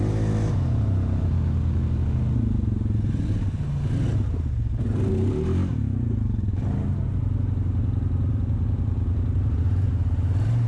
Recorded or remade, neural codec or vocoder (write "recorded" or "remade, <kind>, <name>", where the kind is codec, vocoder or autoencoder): recorded